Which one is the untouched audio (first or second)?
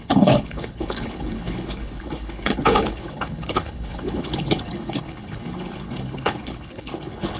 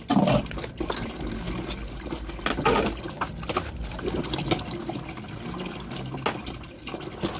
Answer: second